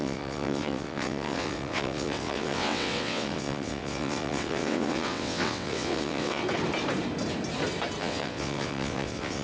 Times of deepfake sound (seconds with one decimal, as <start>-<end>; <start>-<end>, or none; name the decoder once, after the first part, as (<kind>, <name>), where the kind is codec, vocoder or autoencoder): 0.0-6.4 (vocoder, WaveNeXt); 8.0-9.4